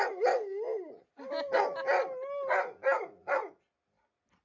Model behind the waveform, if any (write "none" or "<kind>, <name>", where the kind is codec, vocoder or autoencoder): none